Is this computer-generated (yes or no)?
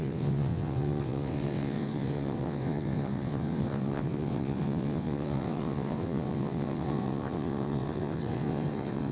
yes